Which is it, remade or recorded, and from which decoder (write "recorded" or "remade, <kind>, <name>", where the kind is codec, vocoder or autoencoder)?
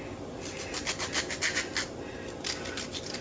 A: recorded